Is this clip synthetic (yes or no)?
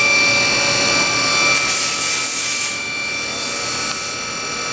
no